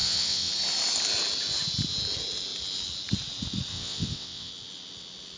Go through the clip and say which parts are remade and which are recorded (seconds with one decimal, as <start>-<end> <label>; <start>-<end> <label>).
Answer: 0.0-0.5 remade; 0.5-3.7 recorded; 3.7-4.5 remade; 4.5-5.4 recorded